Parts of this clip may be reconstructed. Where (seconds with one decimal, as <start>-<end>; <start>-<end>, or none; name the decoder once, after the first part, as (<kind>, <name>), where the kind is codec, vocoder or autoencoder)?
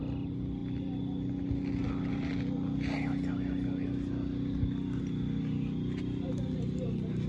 none